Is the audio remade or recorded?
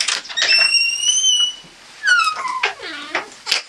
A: recorded